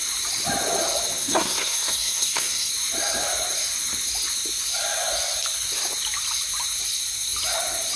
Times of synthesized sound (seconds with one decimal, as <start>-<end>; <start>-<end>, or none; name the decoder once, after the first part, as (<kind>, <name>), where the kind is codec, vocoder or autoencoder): 1.2-2.7 (codec, SNAC)

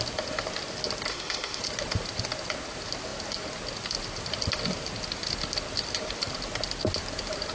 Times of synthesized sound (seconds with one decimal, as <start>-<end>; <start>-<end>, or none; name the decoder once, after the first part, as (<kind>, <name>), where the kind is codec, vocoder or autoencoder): 1.1-1.6 (autoencoder, DAC-VAE)

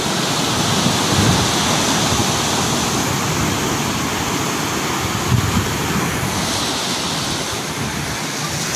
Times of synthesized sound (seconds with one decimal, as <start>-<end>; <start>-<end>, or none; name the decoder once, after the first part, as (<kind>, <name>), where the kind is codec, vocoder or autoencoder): none

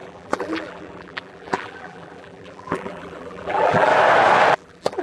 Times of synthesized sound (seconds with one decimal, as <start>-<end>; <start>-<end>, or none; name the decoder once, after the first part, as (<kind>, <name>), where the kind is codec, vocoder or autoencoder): 0.0-3.9 (vocoder, BigVGAN v2); 4.5-5.0

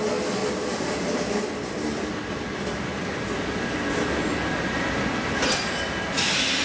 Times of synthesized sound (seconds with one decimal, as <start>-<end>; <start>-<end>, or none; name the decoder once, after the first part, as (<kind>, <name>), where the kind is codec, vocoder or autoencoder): none

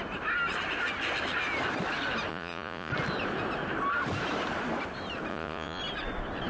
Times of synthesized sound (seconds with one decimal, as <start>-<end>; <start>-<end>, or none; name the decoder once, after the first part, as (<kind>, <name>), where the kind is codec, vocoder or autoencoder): 2.3-2.9 (vocoder, Vocos); 5.3-5.8